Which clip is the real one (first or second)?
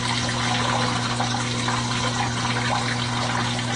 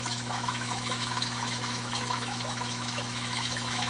first